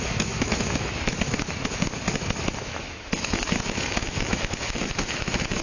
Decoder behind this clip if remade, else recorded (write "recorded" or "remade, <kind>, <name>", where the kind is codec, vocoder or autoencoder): remade, autoencoder, DAC-VAE